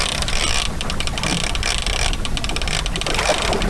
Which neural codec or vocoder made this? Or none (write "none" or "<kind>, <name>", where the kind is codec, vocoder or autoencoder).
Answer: none